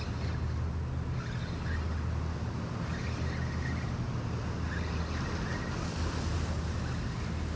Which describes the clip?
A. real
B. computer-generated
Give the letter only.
A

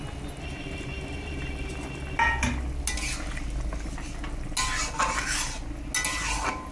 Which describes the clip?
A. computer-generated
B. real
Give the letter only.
B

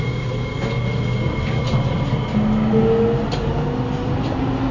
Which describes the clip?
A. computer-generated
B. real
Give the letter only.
B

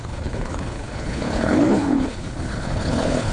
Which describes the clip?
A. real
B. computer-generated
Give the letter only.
B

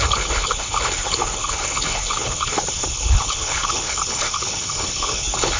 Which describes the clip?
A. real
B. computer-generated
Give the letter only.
B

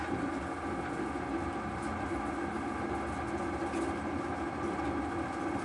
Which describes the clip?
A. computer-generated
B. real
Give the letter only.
B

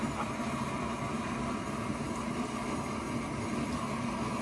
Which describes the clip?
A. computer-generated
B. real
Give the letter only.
B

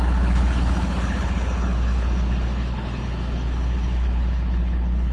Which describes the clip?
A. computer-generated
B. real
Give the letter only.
A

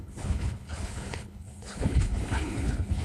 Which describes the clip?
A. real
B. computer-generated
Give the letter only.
B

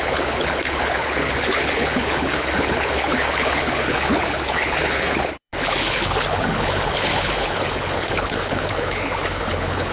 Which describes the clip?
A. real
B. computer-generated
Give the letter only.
B